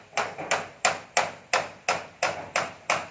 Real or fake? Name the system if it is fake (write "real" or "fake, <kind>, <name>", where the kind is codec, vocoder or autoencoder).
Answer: real